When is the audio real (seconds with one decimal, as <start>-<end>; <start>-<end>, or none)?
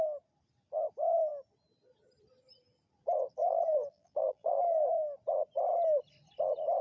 0.0-3.4; 4.6-6.8